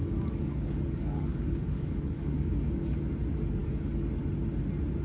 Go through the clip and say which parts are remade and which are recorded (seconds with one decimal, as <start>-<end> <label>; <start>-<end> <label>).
0.0-3.0 remade; 3.0-3.6 recorded; 3.6-4.1 remade; 4.1-5.0 recorded